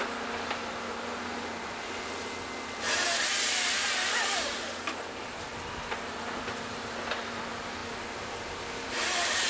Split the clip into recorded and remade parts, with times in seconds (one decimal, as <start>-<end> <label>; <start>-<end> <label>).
0.0-9.5 recorded